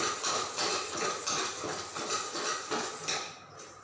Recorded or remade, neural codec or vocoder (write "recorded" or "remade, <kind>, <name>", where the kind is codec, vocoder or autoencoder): recorded